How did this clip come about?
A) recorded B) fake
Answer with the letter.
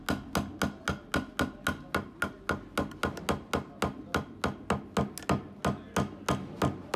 A